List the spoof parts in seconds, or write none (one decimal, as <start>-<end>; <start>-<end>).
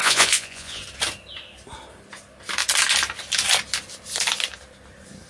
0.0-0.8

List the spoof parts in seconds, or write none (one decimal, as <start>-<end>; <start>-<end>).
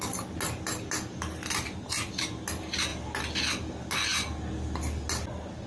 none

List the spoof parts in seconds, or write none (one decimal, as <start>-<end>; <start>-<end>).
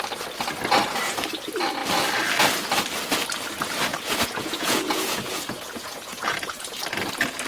3.9-6.8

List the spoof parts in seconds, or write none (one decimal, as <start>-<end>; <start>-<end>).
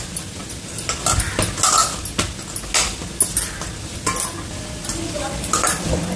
none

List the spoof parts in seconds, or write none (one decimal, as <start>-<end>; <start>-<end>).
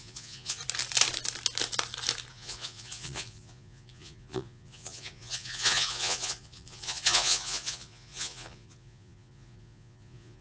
0.0-0.6; 2.3-10.4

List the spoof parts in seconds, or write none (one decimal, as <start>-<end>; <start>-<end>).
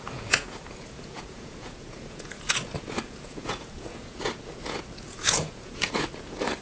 0.0-6.6